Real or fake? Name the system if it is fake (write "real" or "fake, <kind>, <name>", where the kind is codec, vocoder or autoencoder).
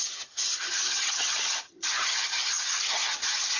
fake, vocoder, HiFi-GAN